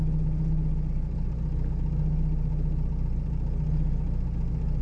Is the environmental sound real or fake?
real